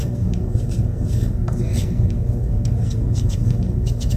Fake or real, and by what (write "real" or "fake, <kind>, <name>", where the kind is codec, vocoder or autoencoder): fake, codec, SNAC